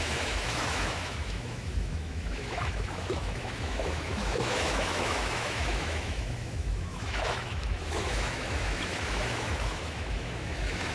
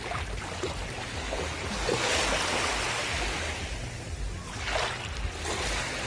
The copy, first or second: first